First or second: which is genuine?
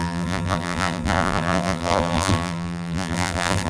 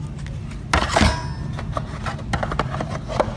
second